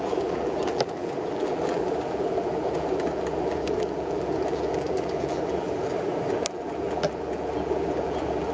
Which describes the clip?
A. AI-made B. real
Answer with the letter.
A